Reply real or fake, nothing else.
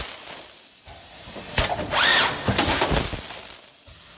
real